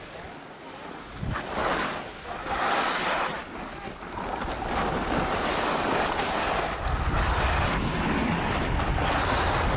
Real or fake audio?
real